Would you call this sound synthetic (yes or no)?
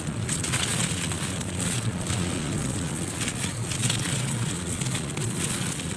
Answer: yes